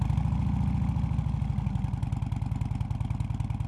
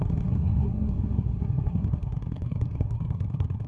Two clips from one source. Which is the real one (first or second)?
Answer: first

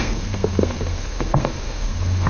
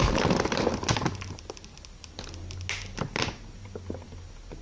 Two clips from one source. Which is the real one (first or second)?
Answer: second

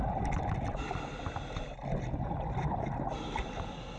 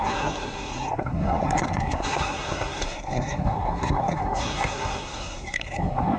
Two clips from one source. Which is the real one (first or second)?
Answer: first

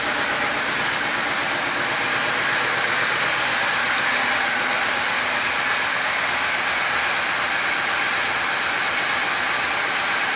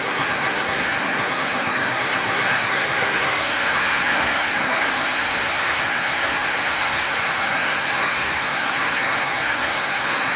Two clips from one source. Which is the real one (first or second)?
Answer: first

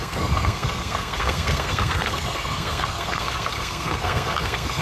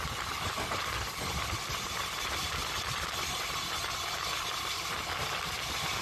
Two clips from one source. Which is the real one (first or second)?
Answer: second